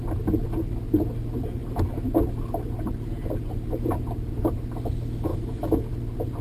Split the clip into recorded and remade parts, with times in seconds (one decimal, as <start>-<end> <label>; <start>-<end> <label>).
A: 0.0-5.3 recorded; 5.3-5.9 remade; 5.9-6.4 recorded